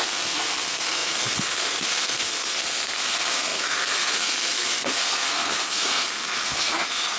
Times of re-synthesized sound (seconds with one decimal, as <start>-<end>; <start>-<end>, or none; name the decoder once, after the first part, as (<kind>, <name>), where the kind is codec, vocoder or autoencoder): 0.0-7.2 (codec, SNAC)